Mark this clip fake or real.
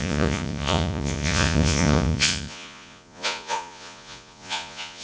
fake